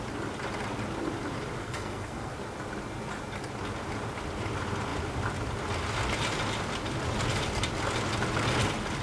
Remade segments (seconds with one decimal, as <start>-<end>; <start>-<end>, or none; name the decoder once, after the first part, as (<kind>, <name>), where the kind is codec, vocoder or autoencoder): 1.6-2.3 (codec, SNAC)